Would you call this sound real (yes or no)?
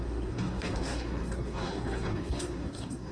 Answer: no